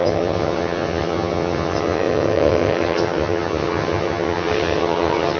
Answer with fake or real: fake